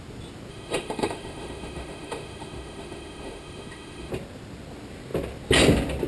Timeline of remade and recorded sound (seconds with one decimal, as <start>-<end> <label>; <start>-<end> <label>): 0.0-0.5 recorded; 0.5-4.1 remade; 4.1-6.1 recorded